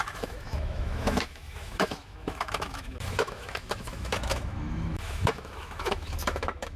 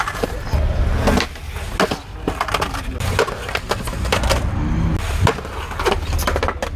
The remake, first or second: first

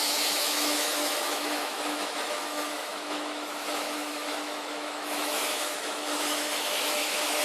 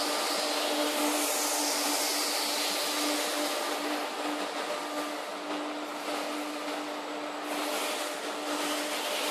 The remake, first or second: first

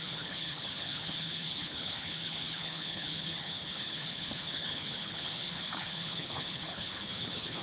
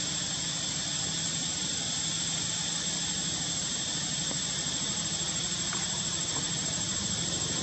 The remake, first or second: first